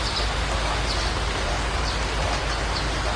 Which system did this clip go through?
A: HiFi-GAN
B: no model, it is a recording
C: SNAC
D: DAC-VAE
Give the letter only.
B